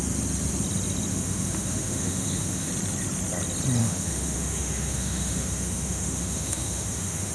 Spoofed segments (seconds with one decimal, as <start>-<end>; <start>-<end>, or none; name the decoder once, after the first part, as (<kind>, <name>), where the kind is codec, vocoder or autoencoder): 1.1-2.7 (autoencoder, DAC-VAE); 3.8-7.3